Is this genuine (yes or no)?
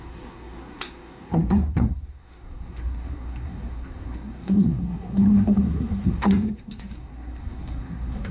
no